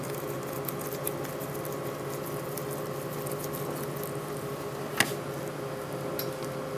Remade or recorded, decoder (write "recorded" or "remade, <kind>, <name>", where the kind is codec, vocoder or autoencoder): recorded